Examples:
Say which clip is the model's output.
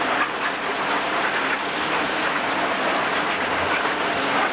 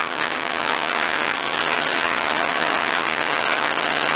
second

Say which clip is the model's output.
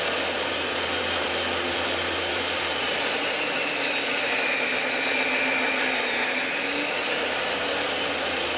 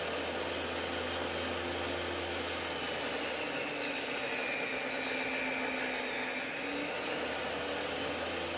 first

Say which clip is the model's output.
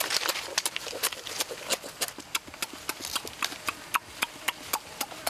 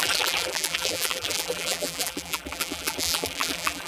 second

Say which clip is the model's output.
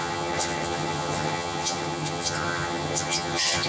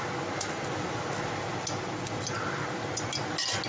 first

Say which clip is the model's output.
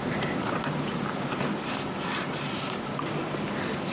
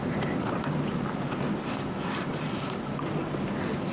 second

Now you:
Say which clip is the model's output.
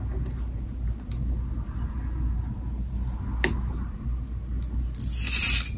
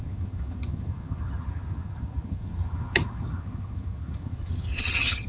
second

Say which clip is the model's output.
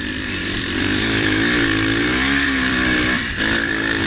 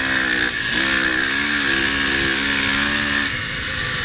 first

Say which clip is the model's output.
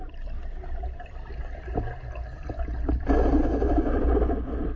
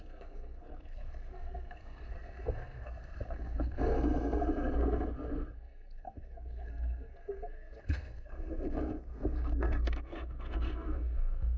second